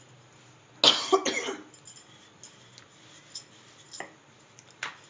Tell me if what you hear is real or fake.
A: real